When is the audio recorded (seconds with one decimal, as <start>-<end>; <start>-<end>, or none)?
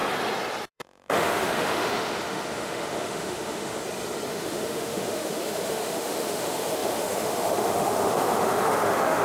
0.0-0.7; 3.8-4.3